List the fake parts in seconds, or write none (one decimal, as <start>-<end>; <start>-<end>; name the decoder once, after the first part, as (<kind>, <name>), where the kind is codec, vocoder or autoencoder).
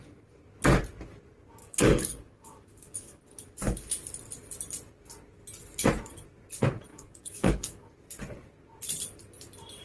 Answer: 1.6-3.2 (codec, DAC); 6.9-7.9